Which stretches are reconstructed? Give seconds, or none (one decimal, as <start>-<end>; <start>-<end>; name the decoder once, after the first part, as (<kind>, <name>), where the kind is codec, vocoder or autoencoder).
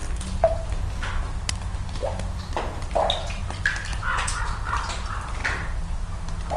3.9-4.4 (vocoder, Vocos)